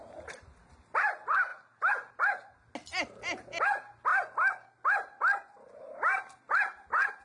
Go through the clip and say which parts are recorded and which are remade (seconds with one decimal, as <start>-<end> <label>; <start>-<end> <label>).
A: 0.0-7.2 recorded